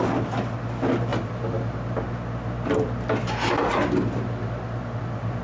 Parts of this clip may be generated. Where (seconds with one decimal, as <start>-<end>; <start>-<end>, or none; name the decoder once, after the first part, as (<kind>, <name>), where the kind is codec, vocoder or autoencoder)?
none